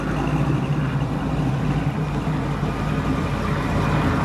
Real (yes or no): yes